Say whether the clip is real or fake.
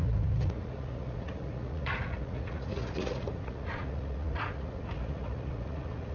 fake